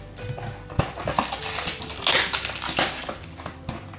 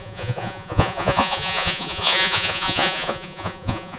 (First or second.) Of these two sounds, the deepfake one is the second